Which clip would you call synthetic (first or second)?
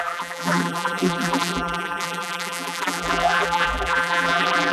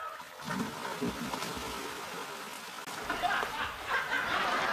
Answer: first